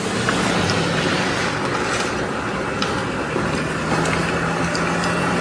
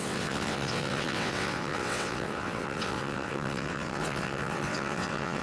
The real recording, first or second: first